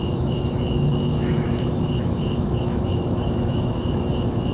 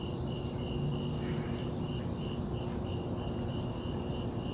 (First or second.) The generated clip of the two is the first